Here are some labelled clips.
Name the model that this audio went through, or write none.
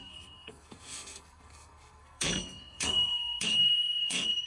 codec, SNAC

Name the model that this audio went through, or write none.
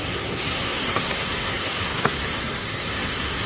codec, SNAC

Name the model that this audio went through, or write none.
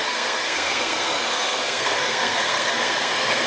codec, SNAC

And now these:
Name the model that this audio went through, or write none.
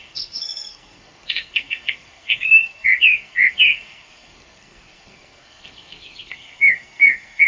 codec, SNAC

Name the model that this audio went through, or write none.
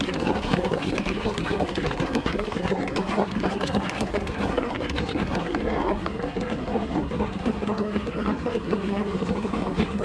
codec, SNAC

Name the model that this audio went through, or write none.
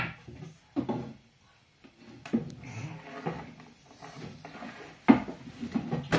none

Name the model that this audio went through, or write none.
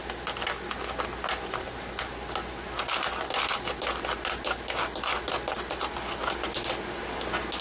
none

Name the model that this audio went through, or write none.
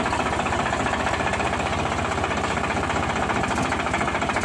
none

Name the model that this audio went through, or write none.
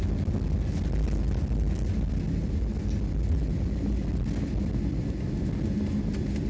none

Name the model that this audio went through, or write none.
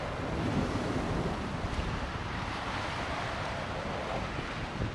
none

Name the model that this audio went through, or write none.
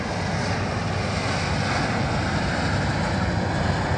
none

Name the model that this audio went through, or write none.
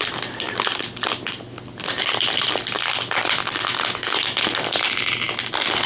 none